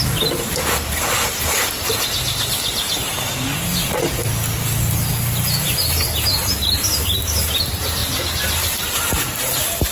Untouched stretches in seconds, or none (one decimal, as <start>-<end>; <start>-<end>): 0.0-9.9